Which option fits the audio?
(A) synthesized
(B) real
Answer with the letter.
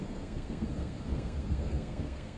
A